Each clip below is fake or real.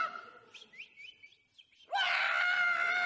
real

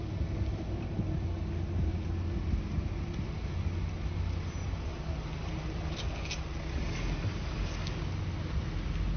real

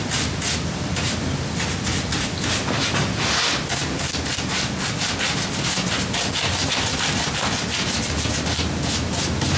real